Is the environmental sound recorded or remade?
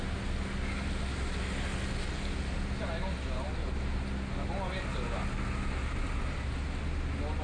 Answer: recorded